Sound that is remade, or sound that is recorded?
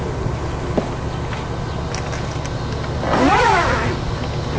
recorded